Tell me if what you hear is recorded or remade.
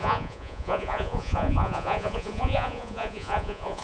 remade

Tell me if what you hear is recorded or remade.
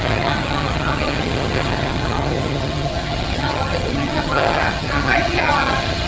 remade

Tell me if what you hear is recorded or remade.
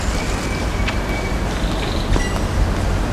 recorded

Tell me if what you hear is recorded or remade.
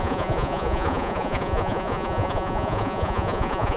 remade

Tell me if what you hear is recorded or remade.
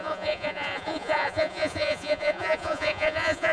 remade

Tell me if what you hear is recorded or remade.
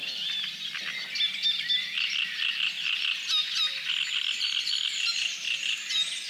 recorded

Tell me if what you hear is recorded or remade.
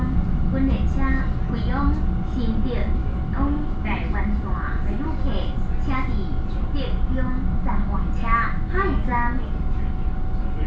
recorded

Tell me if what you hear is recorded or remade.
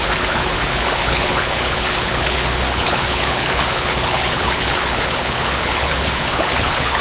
remade